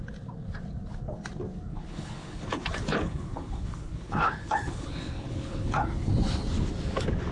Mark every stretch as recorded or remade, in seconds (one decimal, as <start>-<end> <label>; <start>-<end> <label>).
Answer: 0.0-1.7 recorded; 1.7-6.1 remade; 6.1-7.3 recorded